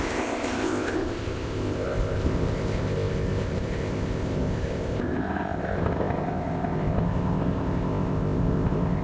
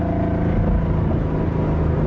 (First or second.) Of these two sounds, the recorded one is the second